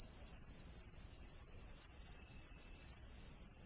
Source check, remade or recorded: recorded